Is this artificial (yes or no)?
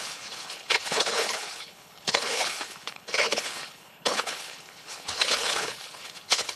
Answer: yes